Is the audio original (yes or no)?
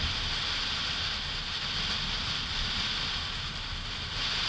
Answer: no